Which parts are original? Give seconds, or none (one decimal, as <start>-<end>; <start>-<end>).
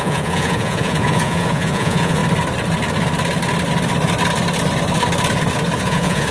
2.2-5.8